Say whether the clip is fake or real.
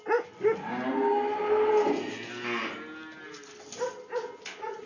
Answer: real